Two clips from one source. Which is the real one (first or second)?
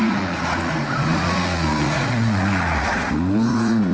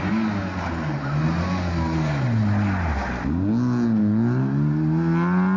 second